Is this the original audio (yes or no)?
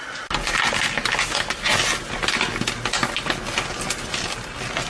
yes